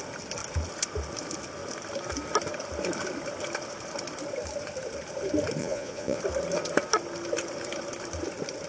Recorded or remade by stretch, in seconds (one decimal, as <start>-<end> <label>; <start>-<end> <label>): 0.0-5.6 recorded; 5.6-6.2 remade; 6.2-8.7 recorded